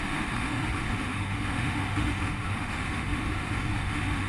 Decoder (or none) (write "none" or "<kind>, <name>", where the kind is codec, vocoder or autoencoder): autoencoder, DAC-VAE